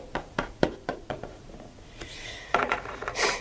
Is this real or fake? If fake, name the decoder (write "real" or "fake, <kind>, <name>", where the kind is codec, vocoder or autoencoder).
fake, vocoder, Vocos